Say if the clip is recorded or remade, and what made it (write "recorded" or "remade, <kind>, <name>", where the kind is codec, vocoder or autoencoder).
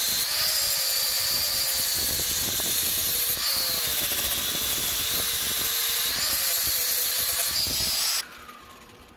recorded